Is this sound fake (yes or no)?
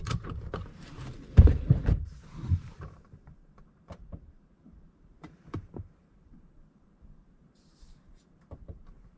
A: yes